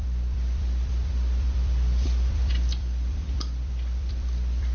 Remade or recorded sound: remade